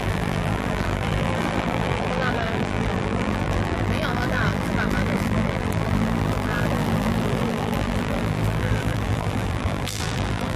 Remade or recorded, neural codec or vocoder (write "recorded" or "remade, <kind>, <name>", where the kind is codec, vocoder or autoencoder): remade, vocoder, BigVGAN v2